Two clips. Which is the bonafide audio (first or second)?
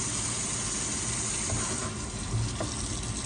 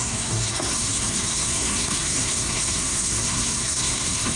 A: first